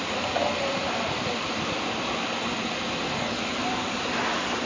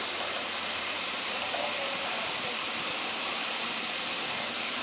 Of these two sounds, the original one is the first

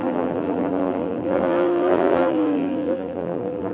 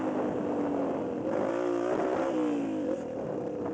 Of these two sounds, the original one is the second